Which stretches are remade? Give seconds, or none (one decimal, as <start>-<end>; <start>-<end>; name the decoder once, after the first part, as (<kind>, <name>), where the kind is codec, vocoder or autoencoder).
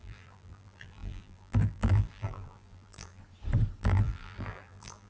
0.0-3.2 (vocoder, BigVGAN v2); 3.8-5.1